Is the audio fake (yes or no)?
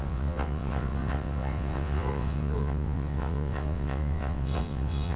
yes